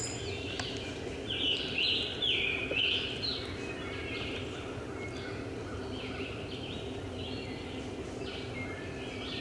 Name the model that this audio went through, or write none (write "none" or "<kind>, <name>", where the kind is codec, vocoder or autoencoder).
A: none